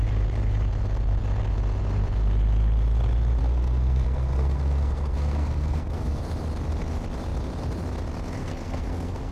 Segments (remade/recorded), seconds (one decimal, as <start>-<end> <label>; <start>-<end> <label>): 0.0-3.4 recorded; 3.4-6.2 remade; 6.2-8.4 recorded; 8.4-9.3 remade

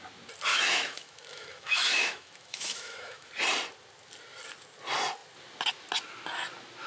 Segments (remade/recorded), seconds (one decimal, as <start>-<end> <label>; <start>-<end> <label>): 0.0-0.5 recorded; 0.5-3.3 remade; 3.3-6.9 recorded

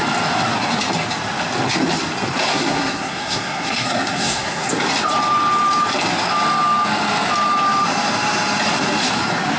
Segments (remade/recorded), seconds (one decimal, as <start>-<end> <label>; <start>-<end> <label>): 0.0-2.5 recorded; 2.5-4.7 remade; 4.7-9.6 recorded

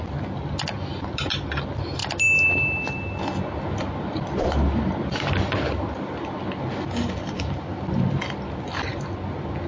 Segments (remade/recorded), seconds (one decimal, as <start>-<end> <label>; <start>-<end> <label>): 0.0-9.7 recorded

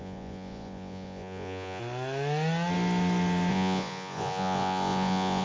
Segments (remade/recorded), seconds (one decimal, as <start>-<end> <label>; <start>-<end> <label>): 0.0-1.8 remade; 1.8-3.5 recorded; 3.5-5.4 remade

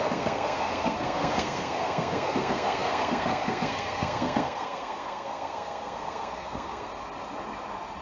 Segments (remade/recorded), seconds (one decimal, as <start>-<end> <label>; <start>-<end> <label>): 0.0-6.9 remade; 6.9-8.0 recorded

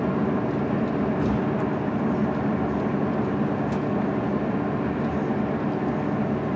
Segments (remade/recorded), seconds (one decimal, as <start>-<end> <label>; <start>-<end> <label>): 0.0-6.6 recorded